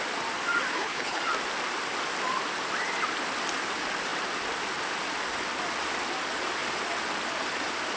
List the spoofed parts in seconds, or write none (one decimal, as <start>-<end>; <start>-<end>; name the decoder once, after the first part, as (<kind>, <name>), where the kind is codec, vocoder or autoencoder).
0.7-1.2 (codec, HILCodec)